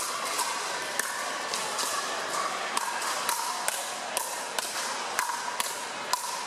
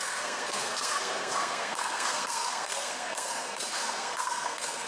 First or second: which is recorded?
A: first